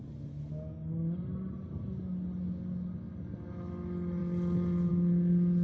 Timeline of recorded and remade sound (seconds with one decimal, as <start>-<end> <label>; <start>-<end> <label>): 0.0-5.6 recorded